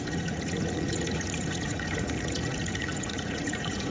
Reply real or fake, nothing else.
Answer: fake